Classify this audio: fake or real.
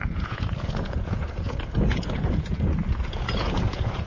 fake